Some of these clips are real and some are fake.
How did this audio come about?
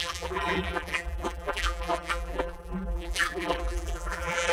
fake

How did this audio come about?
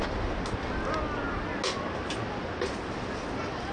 real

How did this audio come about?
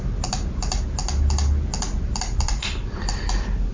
real